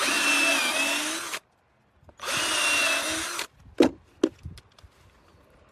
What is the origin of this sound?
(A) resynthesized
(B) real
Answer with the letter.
B